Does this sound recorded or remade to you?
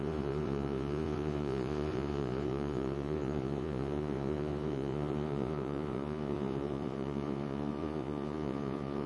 remade